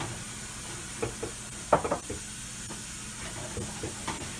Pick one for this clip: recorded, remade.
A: recorded